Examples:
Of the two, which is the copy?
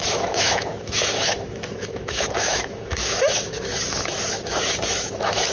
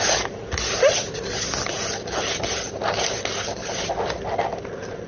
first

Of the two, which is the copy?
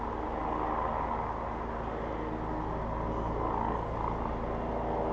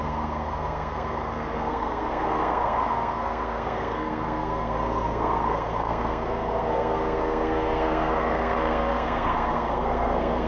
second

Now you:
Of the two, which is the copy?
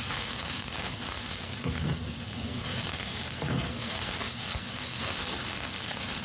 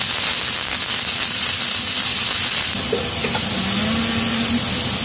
first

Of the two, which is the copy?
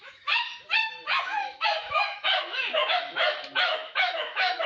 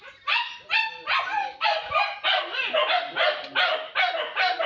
first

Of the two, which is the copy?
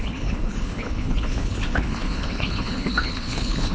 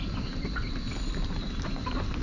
first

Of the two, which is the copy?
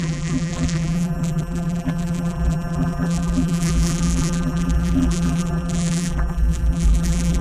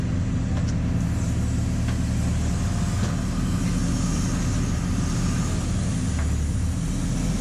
first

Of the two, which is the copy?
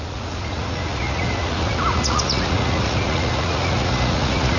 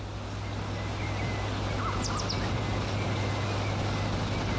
first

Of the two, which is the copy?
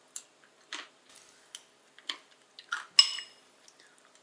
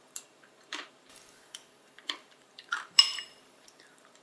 second